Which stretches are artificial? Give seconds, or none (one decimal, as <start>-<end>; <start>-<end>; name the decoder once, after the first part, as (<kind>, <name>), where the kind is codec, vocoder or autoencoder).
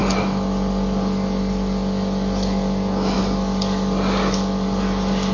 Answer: none